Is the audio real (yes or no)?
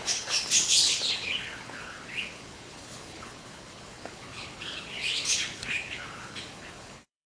no